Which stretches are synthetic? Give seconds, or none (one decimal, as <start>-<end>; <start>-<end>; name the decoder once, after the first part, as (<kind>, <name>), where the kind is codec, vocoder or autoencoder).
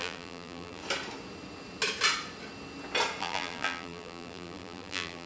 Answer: 0.0-0.8 (vocoder, BigVGAN v2); 3.2-5.3